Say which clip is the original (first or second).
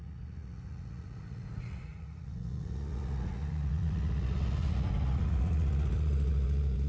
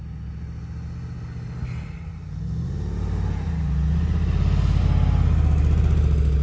second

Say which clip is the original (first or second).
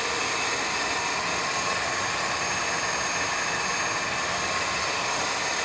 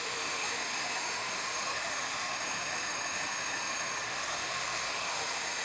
first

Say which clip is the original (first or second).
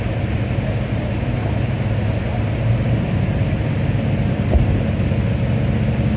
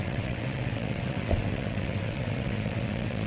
first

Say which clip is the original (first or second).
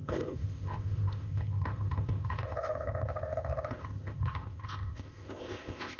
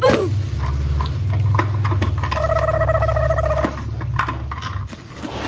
second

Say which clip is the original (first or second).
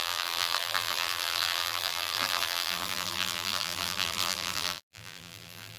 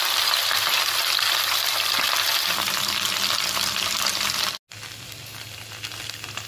second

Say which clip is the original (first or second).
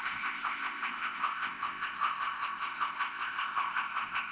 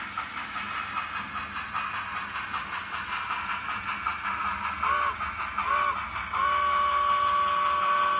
second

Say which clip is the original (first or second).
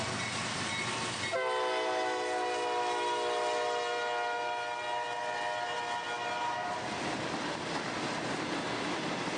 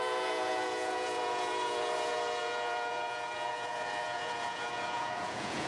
first